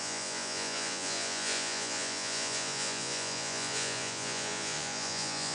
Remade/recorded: remade